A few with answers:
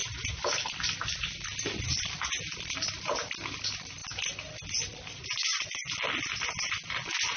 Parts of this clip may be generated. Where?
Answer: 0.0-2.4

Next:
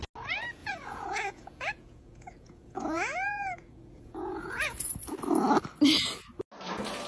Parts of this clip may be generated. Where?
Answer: 0.6-4.9

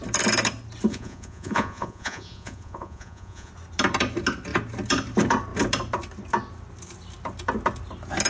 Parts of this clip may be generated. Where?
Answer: 0.9-3.5